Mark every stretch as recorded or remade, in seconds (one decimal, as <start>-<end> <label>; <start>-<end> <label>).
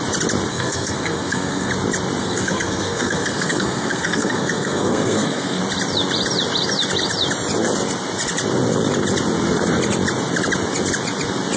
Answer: 0.0-0.5 recorded; 0.5-1.7 remade; 1.7-2.2 recorded; 2.2-5.6 remade; 5.6-11.6 recorded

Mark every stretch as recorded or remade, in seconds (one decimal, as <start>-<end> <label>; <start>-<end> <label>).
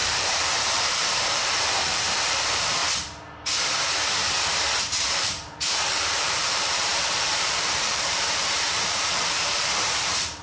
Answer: 0.0-2.8 remade; 2.8-4.8 recorded; 4.8-10.4 remade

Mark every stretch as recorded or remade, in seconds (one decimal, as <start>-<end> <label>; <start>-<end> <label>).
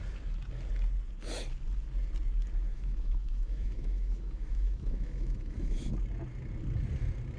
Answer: 0.0-2.7 recorded; 2.7-5.9 remade; 5.9-7.4 recorded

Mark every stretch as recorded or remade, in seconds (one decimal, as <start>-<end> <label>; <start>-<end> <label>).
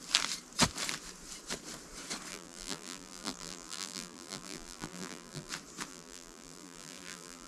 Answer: 0.0-2.3 recorded; 2.3-5.5 remade; 5.5-5.9 recorded; 5.9-7.5 remade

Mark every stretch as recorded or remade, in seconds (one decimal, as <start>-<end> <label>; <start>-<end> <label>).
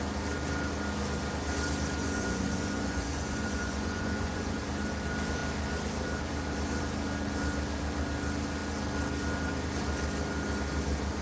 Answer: 0.0-2.0 recorded; 2.0-4.6 remade; 4.6-11.2 recorded